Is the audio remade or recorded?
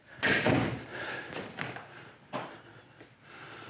recorded